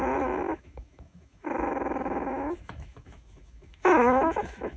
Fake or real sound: fake